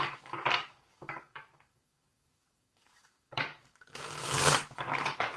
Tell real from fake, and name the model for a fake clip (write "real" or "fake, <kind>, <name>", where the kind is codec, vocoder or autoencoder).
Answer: fake, codec, DAC